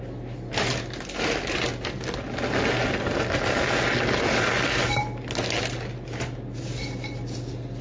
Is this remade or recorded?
recorded